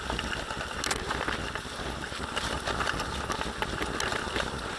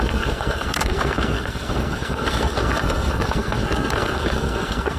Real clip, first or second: first